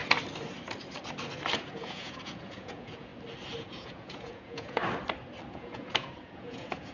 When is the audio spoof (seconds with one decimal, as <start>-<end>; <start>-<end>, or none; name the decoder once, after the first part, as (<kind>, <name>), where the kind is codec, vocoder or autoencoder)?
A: 1.6-3.1 (vocoder, Vocos); 3.6-4.8; 5.5-6.9